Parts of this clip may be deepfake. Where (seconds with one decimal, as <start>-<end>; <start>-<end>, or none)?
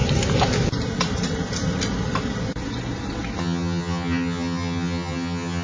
3.4-5.6